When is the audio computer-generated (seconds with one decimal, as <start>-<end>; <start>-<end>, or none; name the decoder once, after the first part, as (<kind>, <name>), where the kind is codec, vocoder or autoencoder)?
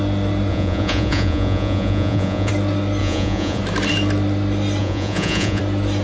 0.5-2.5 (vocoder, Vocos); 3.0-3.6; 4.8-5.6